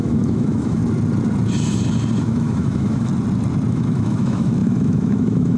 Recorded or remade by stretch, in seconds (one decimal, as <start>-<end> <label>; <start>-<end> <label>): 0.0-0.8 remade; 0.8-2.2 recorded; 2.2-3.1 remade; 3.1-3.7 recorded; 3.7-5.6 remade

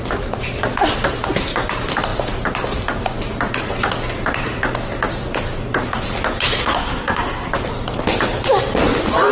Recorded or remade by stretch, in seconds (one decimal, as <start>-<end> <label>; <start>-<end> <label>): 0.0-6.6 recorded; 6.6-7.5 remade; 7.5-9.3 recorded